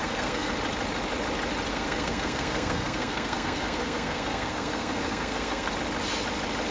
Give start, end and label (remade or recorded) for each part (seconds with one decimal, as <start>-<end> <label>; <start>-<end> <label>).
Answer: 0.0-0.5 remade; 0.5-1.7 recorded; 1.7-5.7 remade; 5.7-6.7 recorded